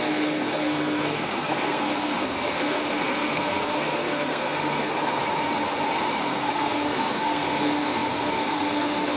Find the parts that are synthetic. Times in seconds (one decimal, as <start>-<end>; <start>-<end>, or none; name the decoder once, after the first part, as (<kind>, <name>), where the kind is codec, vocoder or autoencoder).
0.0-5.2 (codec, SNAC); 6.2-9.2